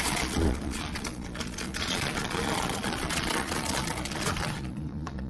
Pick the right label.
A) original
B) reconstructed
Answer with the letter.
B